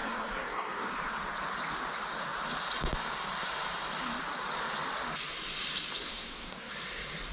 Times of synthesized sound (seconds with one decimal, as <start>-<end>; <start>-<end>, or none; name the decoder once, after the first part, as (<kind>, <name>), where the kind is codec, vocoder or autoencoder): 0.0-0.9 (codec, SNAC); 6.1-6.7